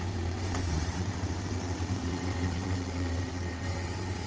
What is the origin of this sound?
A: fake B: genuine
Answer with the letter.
A